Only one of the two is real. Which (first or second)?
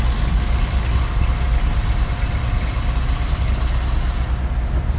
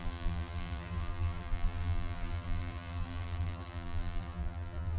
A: first